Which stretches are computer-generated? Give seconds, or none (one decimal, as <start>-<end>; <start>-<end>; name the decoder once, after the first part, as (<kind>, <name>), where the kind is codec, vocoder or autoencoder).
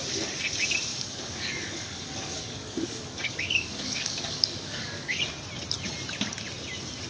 0.9-5.2 (codec, DAC)